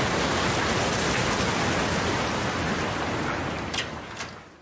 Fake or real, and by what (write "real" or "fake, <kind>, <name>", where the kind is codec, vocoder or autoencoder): real